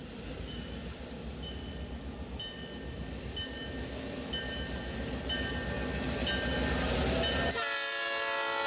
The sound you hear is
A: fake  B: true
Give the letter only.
B